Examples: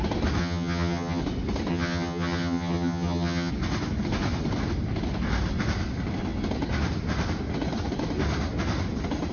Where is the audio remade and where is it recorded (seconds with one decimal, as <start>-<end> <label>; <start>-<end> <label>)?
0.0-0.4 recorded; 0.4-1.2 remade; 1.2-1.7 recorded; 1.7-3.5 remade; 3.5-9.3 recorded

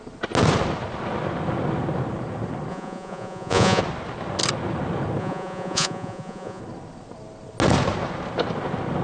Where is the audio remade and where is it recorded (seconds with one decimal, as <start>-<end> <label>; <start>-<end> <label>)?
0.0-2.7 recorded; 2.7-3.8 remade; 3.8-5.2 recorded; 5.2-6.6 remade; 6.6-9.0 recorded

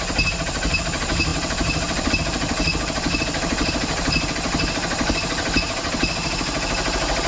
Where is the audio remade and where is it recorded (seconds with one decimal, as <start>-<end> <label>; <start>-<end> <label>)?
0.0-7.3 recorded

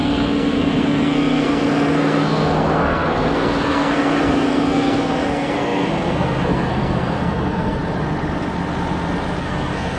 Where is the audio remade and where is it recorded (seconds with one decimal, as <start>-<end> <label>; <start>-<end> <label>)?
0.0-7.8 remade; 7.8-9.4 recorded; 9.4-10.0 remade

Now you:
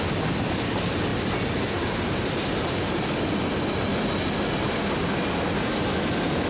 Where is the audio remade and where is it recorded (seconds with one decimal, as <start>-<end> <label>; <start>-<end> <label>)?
0.0-6.5 recorded